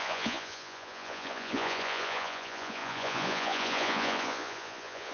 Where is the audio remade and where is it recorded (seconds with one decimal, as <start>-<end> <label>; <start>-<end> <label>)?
0.0-5.1 remade